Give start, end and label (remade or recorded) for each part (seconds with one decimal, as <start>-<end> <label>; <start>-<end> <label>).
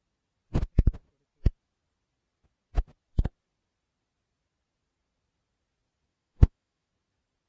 0.0-6.1 recorded; 6.1-6.9 remade; 6.9-7.5 recorded